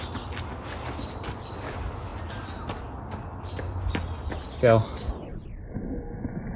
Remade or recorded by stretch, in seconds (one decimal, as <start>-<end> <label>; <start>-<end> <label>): 0.0-6.6 recorded